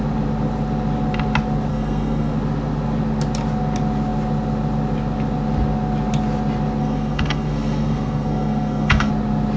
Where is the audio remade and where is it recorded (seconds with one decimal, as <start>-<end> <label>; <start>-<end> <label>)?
0.0-1.7 recorded; 1.7-2.3 remade; 2.3-6.8 recorded; 6.8-9.1 remade; 9.1-9.6 recorded